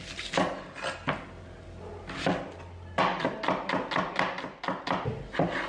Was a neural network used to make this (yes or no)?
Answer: no